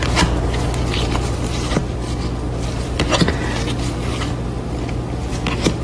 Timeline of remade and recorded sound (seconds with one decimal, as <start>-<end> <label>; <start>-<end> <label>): 0.0-5.8 recorded

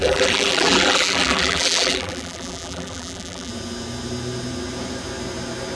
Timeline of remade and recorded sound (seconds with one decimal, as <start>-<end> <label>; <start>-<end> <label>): 0.0-3.5 remade; 3.5-5.8 recorded

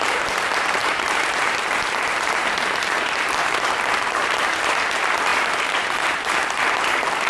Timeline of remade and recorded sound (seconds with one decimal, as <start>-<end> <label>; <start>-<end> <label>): 0.0-7.3 remade

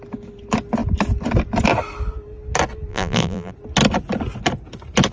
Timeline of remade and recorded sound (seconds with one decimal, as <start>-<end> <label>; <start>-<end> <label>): 0.0-2.9 recorded; 2.9-3.5 remade; 3.5-5.1 recorded

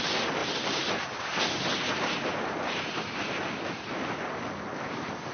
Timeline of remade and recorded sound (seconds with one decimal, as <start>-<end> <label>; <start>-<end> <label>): 0.0-0.4 recorded; 0.4-3.2 remade; 3.2-5.3 recorded

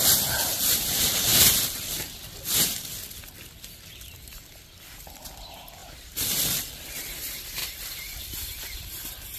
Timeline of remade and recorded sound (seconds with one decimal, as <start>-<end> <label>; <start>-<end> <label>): 0.0-1.3 remade; 1.3-4.0 recorded; 4.0-5.8 remade; 5.8-6.6 recorded; 6.6-9.4 remade